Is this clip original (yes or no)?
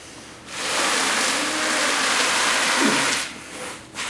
yes